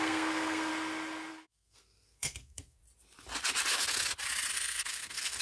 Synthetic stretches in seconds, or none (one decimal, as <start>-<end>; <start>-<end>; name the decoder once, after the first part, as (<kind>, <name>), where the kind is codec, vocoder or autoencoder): 0.0-0.7 (codec, SNAC); 1.3-2.8; 4.5-5.4